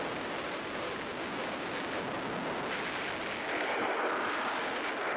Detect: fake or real real